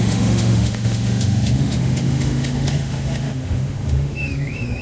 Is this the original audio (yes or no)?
no